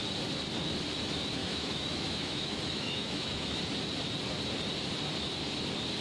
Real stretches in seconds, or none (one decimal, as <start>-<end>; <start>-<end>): 0.0-1.4; 3.6-6.0